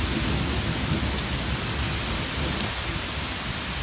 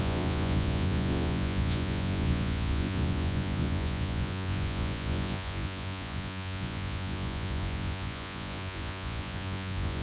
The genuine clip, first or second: first